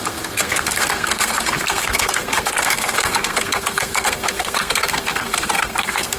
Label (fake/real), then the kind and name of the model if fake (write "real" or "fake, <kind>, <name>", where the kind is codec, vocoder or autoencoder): fake, codec, SNAC